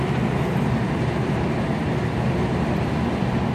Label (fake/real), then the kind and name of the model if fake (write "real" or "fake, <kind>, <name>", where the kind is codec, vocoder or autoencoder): real